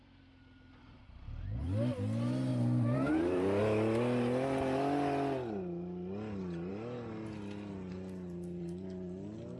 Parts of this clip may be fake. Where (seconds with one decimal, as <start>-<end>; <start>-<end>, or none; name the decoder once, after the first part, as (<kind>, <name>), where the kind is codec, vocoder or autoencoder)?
2.5-3.6 (vocoder, BigVGAN v2)